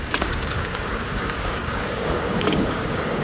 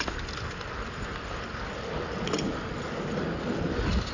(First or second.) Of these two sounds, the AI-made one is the first